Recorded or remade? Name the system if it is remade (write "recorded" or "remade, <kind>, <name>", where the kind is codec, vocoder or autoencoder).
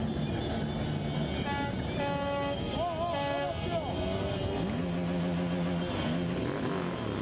recorded